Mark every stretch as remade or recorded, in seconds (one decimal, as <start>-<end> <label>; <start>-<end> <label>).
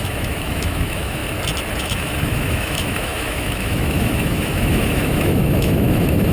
0.0-1.2 remade; 1.2-1.8 recorded; 1.8-6.3 remade